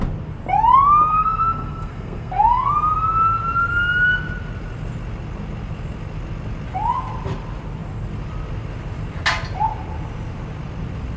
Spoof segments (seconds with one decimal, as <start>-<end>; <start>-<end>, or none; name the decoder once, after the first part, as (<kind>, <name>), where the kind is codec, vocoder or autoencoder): 1.1-2.7 (codec, SNAC)